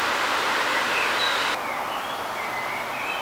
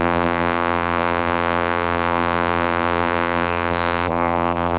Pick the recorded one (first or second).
first